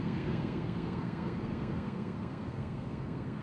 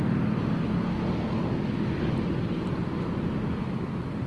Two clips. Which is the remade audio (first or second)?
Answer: first